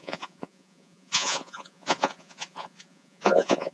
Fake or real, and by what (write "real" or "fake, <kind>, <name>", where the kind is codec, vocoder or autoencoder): fake, vocoder, Vocos